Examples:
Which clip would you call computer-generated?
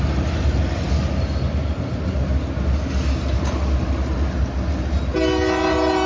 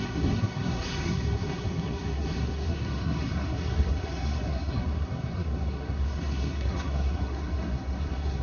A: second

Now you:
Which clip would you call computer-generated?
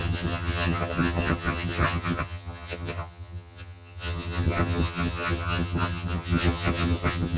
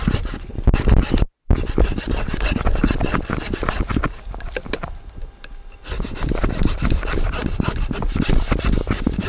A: first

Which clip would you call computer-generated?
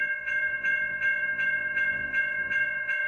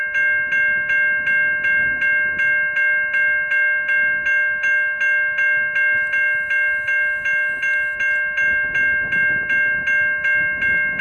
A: first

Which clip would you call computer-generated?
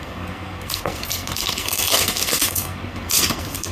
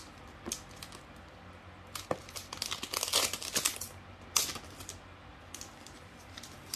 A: first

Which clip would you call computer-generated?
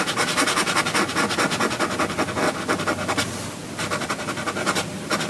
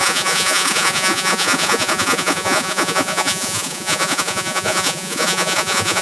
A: second